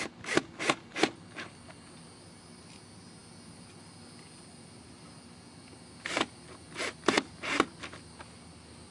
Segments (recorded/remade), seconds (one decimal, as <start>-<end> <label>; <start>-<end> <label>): 0.0-8.9 recorded

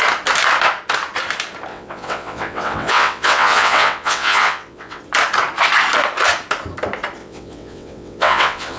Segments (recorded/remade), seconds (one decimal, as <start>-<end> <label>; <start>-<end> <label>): 0.0-1.7 recorded; 1.7-5.0 remade; 5.0-7.2 recorded; 7.2-8.8 remade

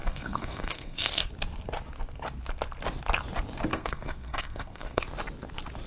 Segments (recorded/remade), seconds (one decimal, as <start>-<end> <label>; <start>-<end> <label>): 0.0-1.3 remade; 1.3-3.7 recorded; 3.7-5.0 remade; 5.0-5.9 recorded

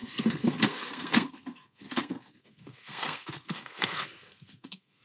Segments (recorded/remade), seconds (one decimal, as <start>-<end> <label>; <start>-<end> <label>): 0.0-5.0 remade

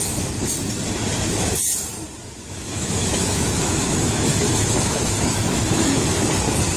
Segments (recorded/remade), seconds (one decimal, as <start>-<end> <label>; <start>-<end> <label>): 0.0-2.2 recorded; 2.2-6.3 remade; 6.3-6.8 recorded

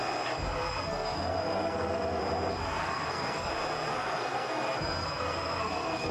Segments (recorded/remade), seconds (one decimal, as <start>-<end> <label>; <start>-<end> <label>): 0.0-0.6 recorded; 0.6-2.2 remade; 2.2-2.6 recorded; 2.6-3.5 remade; 3.5-3.9 recorded; 3.9-6.1 remade

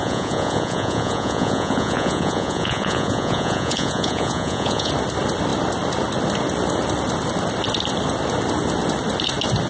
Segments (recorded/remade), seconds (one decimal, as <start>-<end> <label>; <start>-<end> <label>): 0.0-4.9 remade; 4.9-9.7 recorded